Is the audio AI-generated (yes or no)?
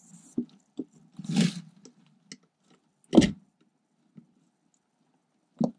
no